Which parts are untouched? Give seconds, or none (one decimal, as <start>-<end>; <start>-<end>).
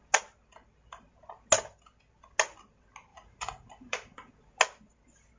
0.0-3.1; 4.3-5.4